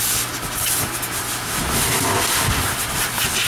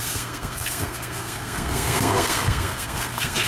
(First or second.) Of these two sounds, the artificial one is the second